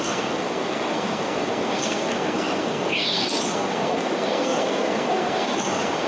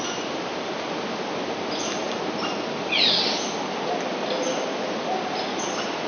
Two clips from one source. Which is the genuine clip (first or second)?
second